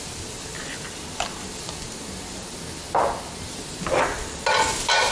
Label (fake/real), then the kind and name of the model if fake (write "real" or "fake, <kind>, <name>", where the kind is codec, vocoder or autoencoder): real